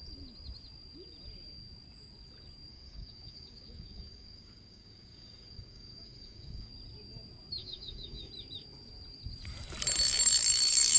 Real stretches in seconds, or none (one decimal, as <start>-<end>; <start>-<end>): 0.0-2.7; 6.7-7.6; 8.3-11.0